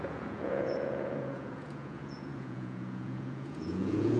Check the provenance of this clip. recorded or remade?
remade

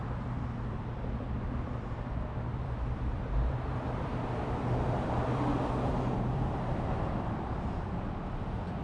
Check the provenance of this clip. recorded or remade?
remade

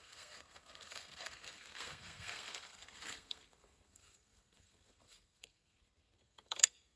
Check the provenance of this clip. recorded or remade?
remade